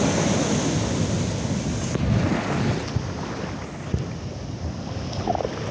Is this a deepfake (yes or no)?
no